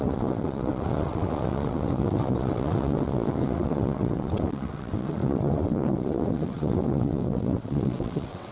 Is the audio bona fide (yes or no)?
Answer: no